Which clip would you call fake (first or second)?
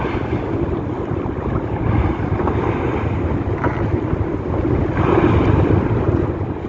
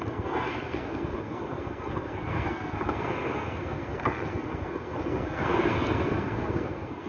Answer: second